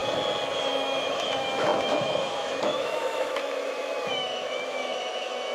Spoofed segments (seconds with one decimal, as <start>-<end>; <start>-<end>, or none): 0.6-5.5